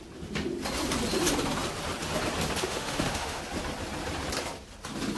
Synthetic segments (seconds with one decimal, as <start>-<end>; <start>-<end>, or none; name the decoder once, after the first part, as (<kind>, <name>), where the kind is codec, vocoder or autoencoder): 2.6-3.4 (autoencoder, DAC-VAE)